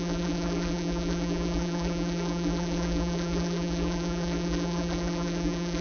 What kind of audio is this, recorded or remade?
remade